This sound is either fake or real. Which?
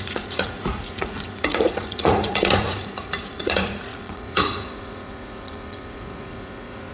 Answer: fake